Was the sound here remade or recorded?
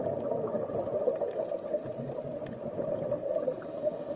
recorded